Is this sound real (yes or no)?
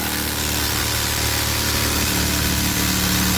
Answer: yes